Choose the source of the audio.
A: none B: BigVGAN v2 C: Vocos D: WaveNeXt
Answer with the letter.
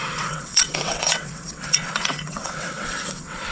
D